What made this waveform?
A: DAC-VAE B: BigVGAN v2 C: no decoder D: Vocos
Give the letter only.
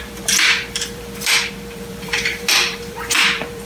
B